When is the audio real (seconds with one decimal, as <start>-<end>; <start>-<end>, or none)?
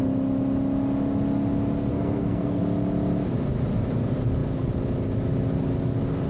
0.0-1.9; 2.6-6.3